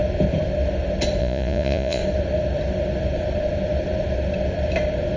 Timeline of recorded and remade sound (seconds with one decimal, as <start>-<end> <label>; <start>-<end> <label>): 0.0-1.2 recorded; 1.2-2.0 remade; 2.0-5.2 recorded